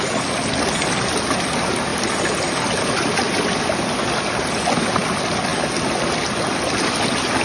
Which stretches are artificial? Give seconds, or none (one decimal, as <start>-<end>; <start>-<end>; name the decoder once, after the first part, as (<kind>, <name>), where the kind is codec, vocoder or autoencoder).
none